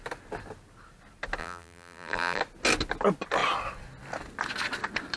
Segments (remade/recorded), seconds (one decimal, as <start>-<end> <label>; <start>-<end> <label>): 0.0-1.4 recorded; 1.4-2.4 remade; 2.4-5.2 recorded